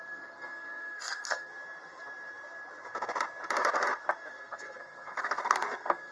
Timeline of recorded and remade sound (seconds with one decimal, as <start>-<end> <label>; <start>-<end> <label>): 0.0-1.5 remade; 1.5-4.3 recorded; 4.3-6.1 remade